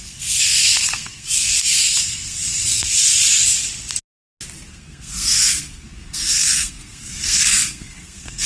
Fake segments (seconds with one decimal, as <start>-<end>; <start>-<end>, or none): 0.0-3.1; 4.7-8.5